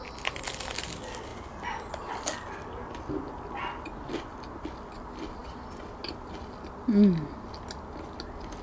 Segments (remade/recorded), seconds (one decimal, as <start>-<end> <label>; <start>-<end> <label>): 0.0-1.3 recorded; 1.3-2.1 remade; 2.1-8.6 recorded